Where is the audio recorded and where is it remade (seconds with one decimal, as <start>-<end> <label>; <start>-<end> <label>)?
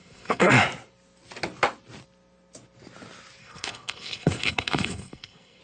0.0-0.5 remade; 0.5-3.4 recorded; 3.4-5.6 remade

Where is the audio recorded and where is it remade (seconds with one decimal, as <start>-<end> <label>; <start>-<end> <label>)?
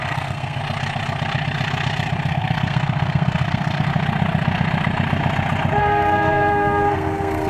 0.0-0.6 remade; 0.6-2.3 recorded; 2.3-3.9 remade; 3.9-5.8 recorded; 5.8-7.5 remade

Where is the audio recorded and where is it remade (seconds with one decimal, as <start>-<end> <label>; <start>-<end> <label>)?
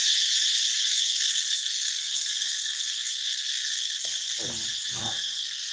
0.0-0.9 recorded; 0.9-4.3 remade; 4.3-5.0 recorded; 5.0-5.7 remade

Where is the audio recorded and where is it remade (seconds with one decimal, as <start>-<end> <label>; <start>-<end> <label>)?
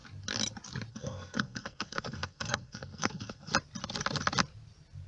0.0-0.9 recorded; 0.9-3.5 remade; 3.5-5.1 recorded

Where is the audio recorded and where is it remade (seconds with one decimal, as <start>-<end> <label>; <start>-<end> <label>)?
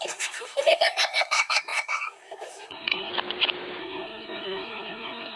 0.0-3.1 remade; 3.1-3.8 recorded; 3.8-5.4 remade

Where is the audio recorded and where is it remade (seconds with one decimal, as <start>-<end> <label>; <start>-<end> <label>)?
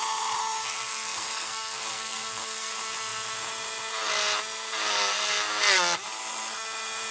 0.0-0.6 recorded; 0.6-2.7 remade; 2.7-7.1 recorded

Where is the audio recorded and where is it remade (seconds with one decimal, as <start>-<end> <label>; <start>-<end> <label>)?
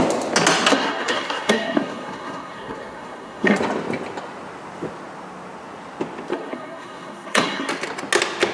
0.0-0.7 recorded; 0.7-3.6 remade; 3.6-6.3 recorded; 6.3-7.7 remade; 7.7-8.5 recorded